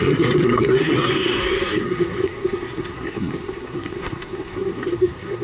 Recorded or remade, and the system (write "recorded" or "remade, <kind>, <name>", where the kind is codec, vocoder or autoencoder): remade, codec, SNAC